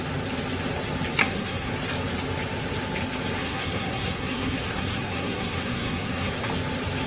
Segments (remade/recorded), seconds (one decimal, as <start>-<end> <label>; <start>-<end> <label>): 0.0-1.2 recorded; 1.2-1.7 remade; 1.7-3.4 recorded; 3.4-6.3 remade; 6.3-7.1 recorded